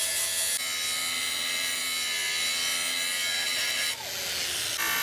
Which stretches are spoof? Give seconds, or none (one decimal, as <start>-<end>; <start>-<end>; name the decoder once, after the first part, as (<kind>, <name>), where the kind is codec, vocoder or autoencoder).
1.2-1.8 (vocoder, BigVGAN v2); 3.1-4.0